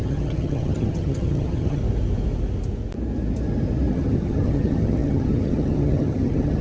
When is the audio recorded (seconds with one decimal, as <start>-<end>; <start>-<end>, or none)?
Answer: 1.8-3.9